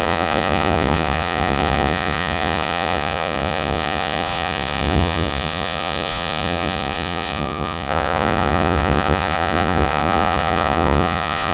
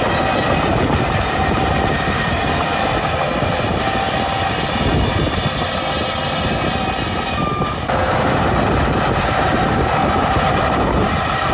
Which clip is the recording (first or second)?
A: second